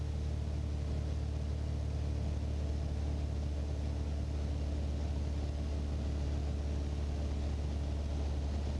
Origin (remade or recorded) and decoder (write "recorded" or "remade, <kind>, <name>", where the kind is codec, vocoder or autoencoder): recorded